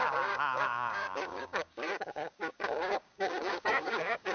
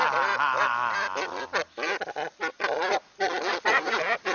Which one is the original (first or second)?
second